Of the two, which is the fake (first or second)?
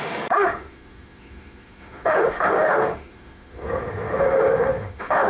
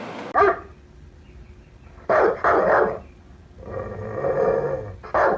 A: first